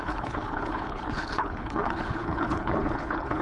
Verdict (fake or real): fake